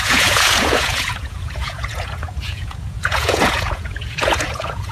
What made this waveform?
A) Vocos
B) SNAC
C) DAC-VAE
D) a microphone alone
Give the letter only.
A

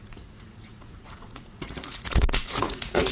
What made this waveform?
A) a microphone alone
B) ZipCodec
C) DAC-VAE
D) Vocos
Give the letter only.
D